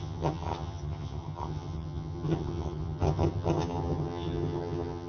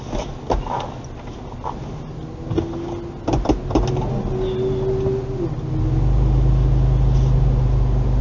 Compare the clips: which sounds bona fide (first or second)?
second